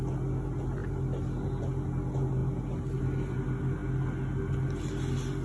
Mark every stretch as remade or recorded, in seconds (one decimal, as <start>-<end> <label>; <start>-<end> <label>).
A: 0.0-5.4 recorded